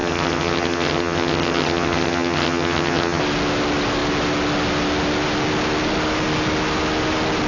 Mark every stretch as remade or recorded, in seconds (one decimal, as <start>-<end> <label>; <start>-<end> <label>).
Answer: 0.0-3.2 remade; 3.2-7.5 recorded